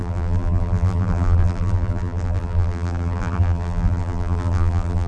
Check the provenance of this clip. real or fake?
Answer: fake